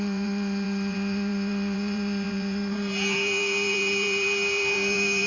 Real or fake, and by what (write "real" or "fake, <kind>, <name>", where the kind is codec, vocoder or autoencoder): fake, vocoder, BigVGAN v2